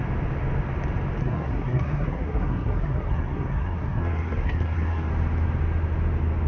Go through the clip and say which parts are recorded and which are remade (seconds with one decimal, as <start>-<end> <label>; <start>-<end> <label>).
0.0-1.2 recorded; 1.2-5.1 remade; 5.1-6.5 recorded